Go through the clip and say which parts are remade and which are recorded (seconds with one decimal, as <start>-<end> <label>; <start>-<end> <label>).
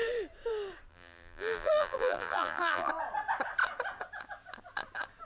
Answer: 0.0-0.9 recorded; 0.9-2.9 remade; 2.9-5.3 recorded